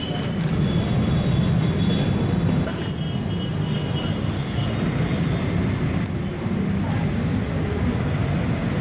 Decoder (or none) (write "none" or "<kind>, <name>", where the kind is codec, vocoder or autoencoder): none